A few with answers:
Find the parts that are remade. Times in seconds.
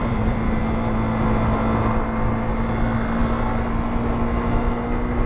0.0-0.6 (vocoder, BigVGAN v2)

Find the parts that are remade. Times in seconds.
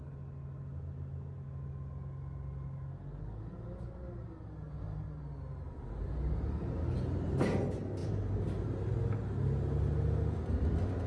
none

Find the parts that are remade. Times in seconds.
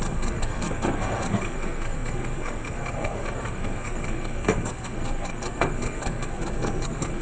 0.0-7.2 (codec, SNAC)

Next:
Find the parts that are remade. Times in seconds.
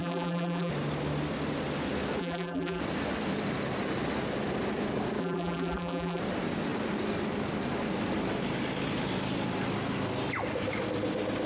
0.0-0.7 (vocoder, BigVGAN v2); 2.2-2.8; 5.2-6.2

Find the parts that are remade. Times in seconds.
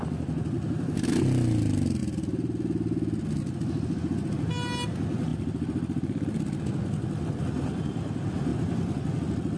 none